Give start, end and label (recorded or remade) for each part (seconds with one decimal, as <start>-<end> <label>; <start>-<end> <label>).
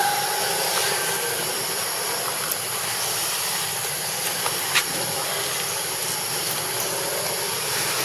0.0-8.0 recorded